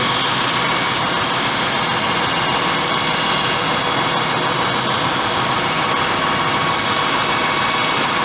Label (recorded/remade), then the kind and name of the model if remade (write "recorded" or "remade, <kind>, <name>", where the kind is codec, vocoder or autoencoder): recorded